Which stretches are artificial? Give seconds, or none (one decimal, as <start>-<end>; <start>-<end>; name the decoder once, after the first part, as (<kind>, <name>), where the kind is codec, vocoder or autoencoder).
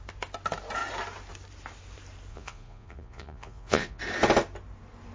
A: 2.3-4.0 (vocoder, Vocos)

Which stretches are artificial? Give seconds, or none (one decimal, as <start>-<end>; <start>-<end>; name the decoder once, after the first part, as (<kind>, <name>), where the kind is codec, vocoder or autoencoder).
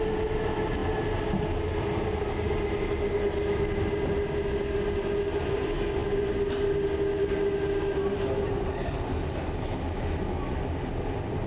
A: none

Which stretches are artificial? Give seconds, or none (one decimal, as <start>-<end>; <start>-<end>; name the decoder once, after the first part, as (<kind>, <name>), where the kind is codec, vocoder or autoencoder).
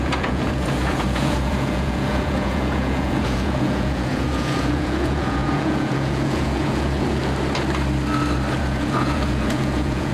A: 0.0-7.2 (vocoder, Vocos); 8.6-10.1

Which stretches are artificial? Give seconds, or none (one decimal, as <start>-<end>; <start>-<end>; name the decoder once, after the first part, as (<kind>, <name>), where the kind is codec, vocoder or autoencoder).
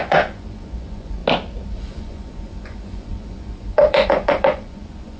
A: 0.0-1.2 (vocoder, Vocos); 1.8-5.2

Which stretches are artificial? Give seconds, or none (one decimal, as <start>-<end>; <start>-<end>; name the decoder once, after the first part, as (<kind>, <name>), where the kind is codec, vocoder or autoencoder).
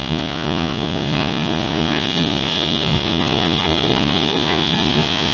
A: 0.0-5.3 (vocoder, Vocos)